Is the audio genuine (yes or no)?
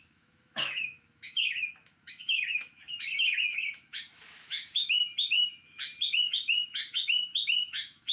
no